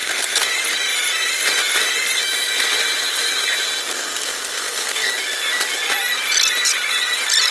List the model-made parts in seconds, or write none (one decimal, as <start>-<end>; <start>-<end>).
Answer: 0.0-0.5; 3.9-5.1